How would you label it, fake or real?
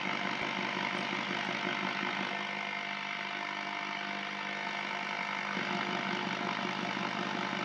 real